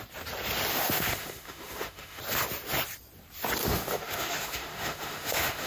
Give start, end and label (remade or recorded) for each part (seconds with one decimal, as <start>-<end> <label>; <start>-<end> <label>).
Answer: 0.0-0.7 recorded; 0.7-2.2 remade; 2.2-3.6 recorded; 3.6-5.7 remade